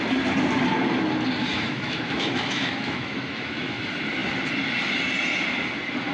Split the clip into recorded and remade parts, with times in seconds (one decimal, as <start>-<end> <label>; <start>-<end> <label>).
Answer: 0.0-1.5 recorded; 1.5-3.8 remade; 3.8-6.1 recorded